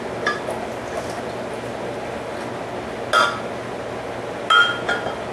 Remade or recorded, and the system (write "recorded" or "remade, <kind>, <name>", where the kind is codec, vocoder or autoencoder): recorded